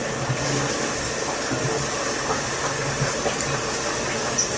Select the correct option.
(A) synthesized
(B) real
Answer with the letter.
B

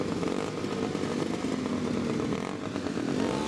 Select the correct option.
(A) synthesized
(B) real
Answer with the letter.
B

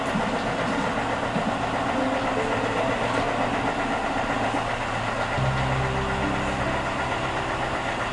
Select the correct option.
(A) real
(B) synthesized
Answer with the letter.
A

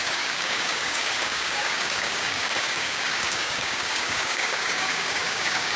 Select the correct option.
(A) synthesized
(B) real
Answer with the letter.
A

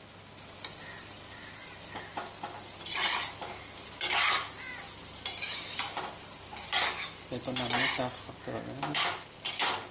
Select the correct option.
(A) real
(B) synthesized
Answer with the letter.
A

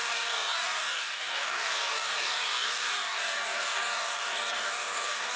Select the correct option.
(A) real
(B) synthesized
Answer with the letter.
B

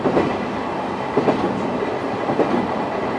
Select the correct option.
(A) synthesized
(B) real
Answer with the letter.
B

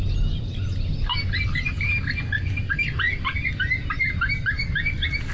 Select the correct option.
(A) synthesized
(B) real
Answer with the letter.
B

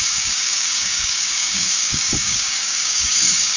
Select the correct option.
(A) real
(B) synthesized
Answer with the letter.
B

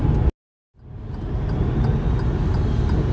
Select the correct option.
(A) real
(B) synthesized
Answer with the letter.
A